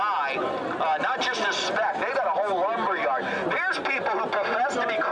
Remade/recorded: recorded